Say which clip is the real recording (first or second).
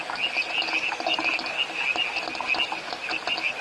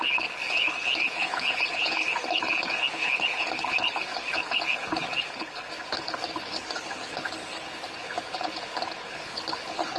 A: first